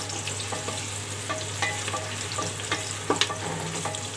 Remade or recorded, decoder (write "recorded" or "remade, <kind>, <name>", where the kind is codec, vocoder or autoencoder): recorded